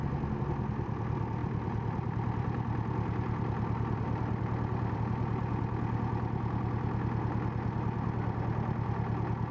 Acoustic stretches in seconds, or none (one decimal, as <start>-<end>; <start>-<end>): 0.0-1.4; 5.0-9.5